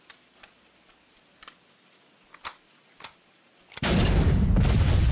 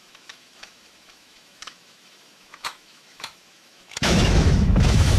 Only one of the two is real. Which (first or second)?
first